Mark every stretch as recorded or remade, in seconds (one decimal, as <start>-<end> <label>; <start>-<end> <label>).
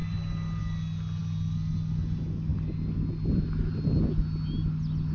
0.0-5.1 recorded